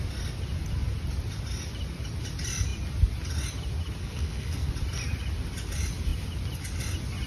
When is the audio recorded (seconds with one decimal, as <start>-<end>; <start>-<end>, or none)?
0.0-4.0; 4.7-7.3